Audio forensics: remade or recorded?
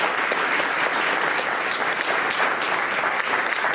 recorded